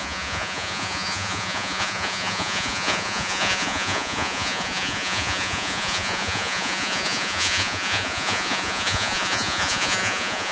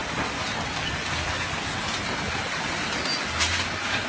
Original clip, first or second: second